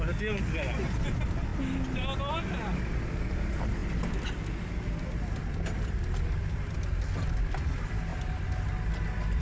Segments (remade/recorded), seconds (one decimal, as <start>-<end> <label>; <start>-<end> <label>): 0.0-9.4 recorded